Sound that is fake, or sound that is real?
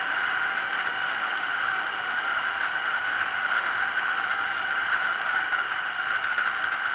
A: fake